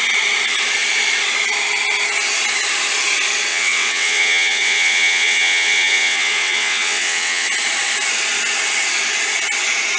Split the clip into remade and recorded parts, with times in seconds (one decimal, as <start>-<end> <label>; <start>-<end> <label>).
0.0-3.5 recorded; 3.5-7.5 remade; 7.5-10.0 recorded